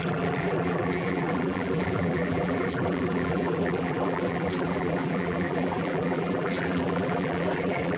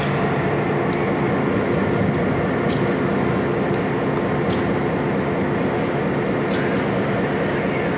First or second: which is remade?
first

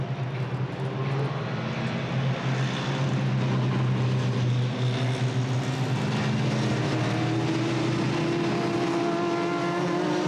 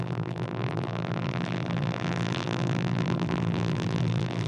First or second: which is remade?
second